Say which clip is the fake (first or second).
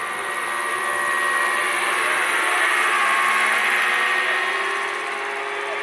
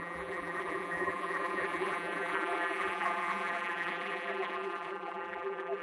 second